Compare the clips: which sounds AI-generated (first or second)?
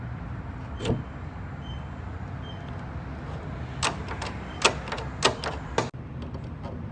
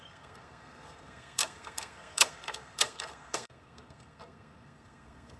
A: second